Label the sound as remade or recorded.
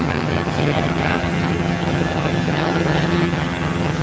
remade